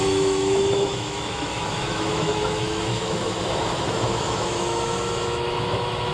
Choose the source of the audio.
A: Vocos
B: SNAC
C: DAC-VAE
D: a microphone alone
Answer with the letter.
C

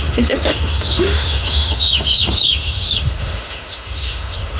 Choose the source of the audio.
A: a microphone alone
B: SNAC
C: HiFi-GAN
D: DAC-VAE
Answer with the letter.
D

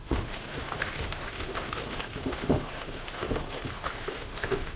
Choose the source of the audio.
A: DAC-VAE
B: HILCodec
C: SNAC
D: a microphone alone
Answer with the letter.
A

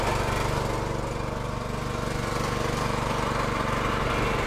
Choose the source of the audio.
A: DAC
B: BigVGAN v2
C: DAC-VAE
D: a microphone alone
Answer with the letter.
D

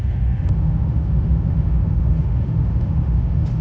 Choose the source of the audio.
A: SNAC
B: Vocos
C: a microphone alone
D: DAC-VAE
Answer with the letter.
D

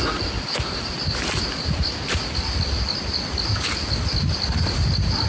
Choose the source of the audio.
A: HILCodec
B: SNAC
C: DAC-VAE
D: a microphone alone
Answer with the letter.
D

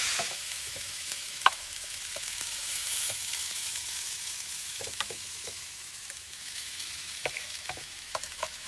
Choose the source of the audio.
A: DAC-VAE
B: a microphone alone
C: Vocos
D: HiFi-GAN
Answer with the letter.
A